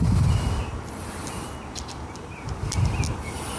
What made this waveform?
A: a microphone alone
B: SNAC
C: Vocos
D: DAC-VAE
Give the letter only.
A